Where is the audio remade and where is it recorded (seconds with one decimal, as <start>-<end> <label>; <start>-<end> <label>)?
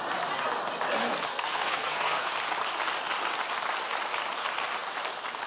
0.0-1.3 recorded; 1.3-2.3 remade; 2.3-5.5 recorded